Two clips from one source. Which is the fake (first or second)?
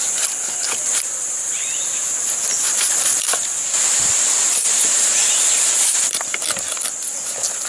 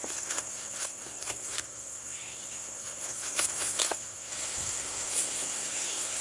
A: second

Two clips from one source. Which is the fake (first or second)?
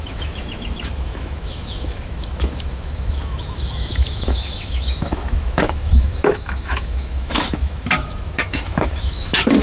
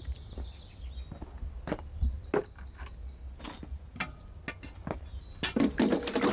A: first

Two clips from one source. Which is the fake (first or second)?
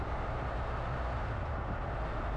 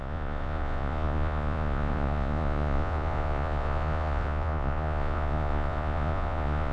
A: second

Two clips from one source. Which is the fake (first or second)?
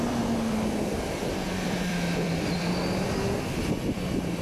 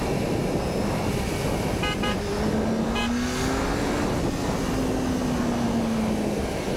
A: first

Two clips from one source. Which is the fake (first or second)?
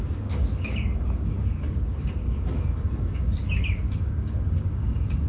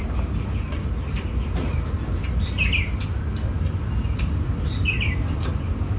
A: first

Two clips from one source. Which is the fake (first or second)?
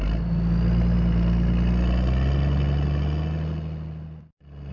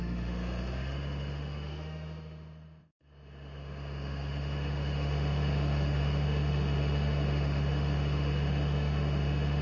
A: second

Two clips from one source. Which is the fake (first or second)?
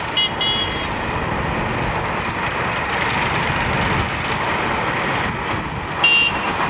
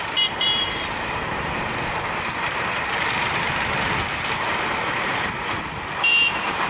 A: second